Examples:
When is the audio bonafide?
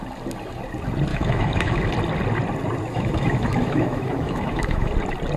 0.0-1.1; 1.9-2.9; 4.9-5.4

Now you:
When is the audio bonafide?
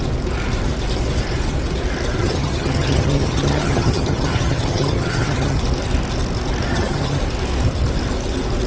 0.0-2.2; 5.6-6.7; 7.2-8.7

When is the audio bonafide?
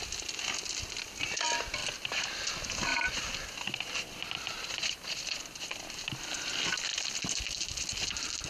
0.0-1.8; 2.5-2.9; 5.9-6.9; 8.1-8.5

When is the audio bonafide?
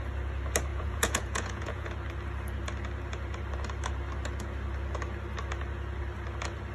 0.0-0.7; 1.9-6.7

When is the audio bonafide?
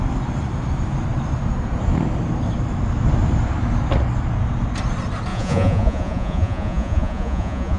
0.0-5.3